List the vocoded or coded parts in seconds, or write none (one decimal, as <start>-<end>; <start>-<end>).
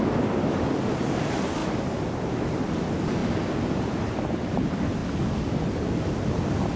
1.6-2.7; 3.2-4.6